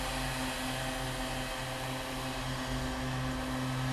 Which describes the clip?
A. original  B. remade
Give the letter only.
A